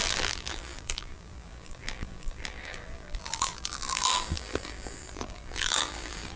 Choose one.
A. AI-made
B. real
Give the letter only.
A